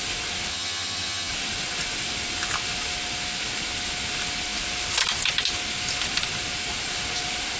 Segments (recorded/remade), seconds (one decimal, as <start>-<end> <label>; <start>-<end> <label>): 0.0-0.5 recorded; 0.5-1.3 remade; 1.3-7.6 recorded